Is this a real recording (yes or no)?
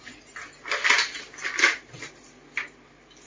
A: yes